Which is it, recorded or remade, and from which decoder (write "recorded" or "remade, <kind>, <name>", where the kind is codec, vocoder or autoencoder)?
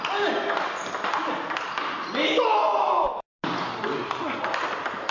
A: recorded